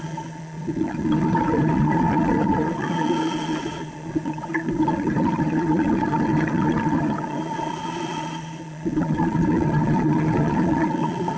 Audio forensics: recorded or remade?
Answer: remade